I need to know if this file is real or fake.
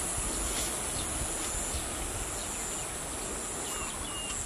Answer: real